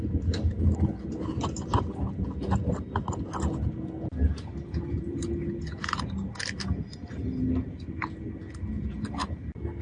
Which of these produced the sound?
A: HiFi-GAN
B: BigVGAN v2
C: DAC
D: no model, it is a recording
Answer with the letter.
D